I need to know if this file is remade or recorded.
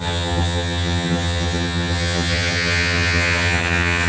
remade